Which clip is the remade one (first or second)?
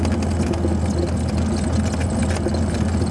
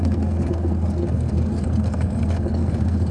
second